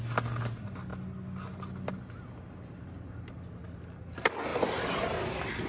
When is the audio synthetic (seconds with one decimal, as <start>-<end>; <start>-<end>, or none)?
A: none